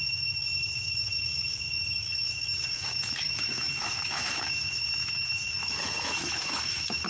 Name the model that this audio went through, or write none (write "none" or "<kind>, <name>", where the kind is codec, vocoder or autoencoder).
autoencoder, DAC-VAE